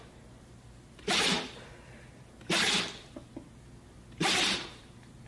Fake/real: real